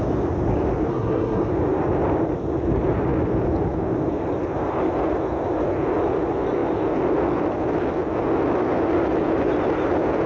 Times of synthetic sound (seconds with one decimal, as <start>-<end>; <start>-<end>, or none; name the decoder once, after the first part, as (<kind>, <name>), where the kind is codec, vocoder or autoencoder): 0.9-1.5 (codec, SNAC)

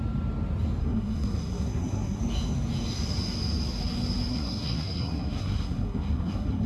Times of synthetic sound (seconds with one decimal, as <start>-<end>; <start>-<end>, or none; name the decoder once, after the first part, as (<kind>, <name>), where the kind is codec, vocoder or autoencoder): 0.8-2.2 (codec, SNAC); 4.3-6.7

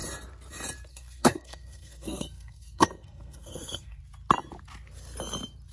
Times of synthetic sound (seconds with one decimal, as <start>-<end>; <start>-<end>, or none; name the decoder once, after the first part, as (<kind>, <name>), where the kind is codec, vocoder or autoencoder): 0.9-4.0 (codec, SNAC)

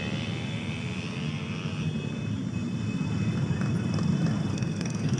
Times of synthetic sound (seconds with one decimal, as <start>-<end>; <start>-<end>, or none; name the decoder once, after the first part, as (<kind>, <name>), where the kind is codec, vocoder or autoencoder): 4.5-5.2 (codec, SNAC)

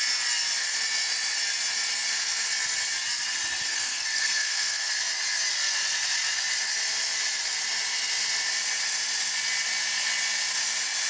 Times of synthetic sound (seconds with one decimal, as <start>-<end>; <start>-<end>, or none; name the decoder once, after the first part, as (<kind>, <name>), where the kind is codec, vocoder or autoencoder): 3.6-4.9 (codec, SNAC)

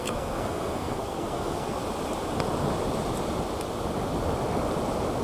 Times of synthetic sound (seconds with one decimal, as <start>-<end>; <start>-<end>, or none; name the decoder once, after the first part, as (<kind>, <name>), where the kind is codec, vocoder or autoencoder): 0.0-1.8 (codec, SNAC)

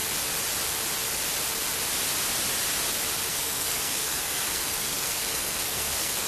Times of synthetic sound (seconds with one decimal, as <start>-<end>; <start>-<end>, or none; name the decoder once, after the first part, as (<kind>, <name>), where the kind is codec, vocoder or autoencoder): 3.3-6.3 (codec, SNAC)

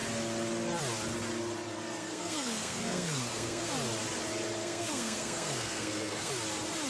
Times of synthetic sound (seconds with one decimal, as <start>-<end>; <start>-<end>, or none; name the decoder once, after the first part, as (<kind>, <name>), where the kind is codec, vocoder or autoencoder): 2.0-3.7 (codec, SNAC); 4.6-6.3